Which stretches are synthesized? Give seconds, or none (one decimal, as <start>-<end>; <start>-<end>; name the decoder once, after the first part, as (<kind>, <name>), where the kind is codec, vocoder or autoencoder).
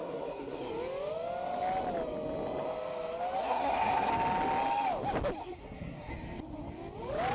0.0-0.7 (codec, SNAC); 3.4-4.1; 5.4-6.1